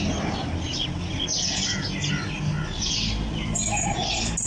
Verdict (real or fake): real